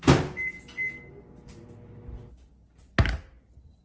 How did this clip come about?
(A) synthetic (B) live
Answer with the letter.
B